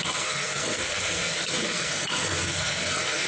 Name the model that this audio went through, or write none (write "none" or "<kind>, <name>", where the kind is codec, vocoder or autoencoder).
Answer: codec, SNAC